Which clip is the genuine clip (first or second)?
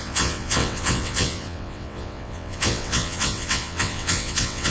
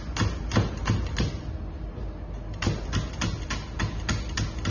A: second